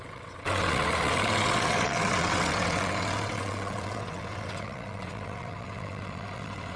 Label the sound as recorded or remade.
remade